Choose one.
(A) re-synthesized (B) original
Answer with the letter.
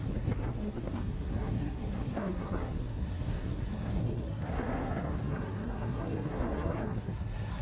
A